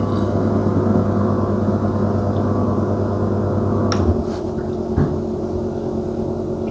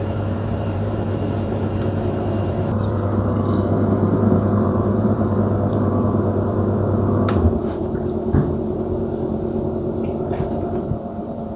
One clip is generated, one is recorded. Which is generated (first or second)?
second